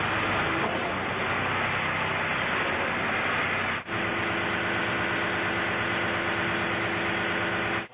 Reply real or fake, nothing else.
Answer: real